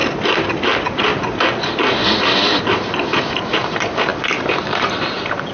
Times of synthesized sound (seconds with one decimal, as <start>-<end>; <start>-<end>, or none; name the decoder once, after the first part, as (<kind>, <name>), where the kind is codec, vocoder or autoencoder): 3.3-4.1 (vocoder, BigVGAN v2); 4.6-5.5